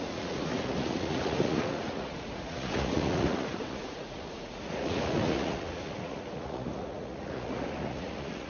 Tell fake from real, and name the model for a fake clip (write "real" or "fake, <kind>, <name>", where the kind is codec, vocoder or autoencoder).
fake, vocoder, Vocos